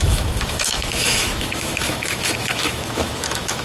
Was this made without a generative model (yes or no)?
no